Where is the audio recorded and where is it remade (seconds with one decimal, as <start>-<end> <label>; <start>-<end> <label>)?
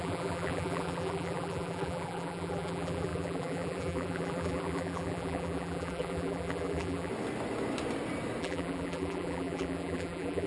0.0-7.1 remade; 7.1-8.4 recorded; 8.4-10.5 remade